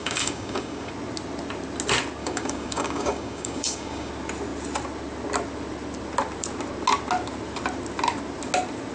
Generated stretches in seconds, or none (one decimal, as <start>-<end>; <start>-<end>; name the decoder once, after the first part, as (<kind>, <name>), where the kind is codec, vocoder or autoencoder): 0.0-0.9 (codec, DAC); 2.2-4.1